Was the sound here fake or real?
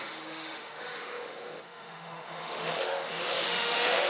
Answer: fake